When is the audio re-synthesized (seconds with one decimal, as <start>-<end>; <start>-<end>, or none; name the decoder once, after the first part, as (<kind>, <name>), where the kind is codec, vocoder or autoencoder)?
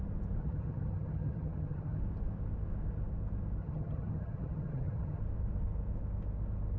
0.4-2.0 (vocoder, HiFi-GAN); 3.6-5.2